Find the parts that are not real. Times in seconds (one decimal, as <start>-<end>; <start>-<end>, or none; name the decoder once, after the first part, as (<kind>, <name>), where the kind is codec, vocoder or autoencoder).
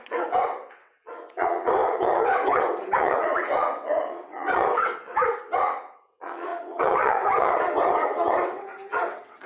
0.0-9.5 (vocoder, WaveNeXt)